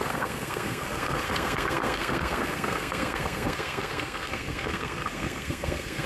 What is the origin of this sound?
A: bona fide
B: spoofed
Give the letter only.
B